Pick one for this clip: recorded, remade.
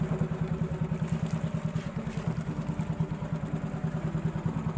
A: recorded